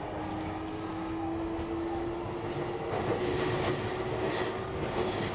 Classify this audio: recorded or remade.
recorded